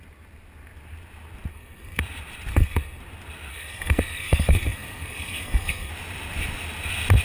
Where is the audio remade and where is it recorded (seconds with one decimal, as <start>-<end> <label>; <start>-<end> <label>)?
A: 0.0-1.5 recorded; 1.5-2.0 remade; 2.0-2.5 recorded; 2.5-3.0 remade; 3.0-3.5 recorded; 3.5-5.9 remade; 5.9-7.2 recorded